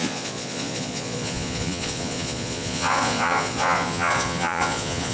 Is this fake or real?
fake